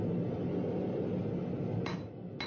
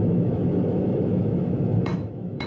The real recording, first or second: first